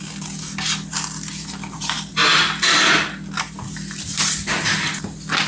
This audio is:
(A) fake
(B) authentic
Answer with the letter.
B